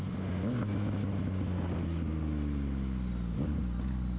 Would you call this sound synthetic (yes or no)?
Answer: no